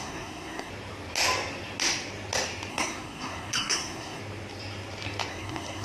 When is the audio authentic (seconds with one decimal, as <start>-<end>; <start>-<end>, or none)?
0.7-2.7; 4.2-5.3

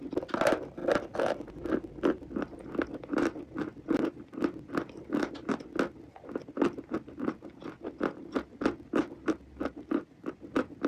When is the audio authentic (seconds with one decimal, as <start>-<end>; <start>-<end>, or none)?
0.0-10.9